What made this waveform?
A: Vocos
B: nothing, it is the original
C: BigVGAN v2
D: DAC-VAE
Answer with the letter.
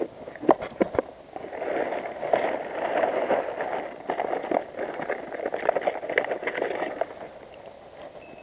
B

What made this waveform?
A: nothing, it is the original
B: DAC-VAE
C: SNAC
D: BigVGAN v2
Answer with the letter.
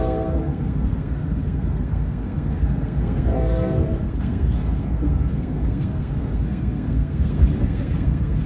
C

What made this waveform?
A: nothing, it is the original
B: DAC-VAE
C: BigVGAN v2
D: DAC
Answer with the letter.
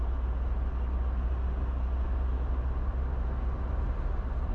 A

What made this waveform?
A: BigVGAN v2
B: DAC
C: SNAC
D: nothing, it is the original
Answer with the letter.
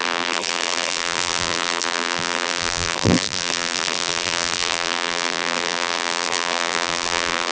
A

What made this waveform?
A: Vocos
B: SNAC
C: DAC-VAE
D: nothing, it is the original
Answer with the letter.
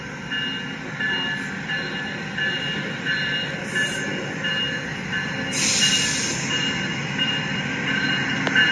D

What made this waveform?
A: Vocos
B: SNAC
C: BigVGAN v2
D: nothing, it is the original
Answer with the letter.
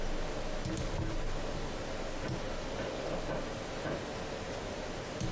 D